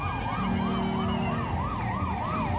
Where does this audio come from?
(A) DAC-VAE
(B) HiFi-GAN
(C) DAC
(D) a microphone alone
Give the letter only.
D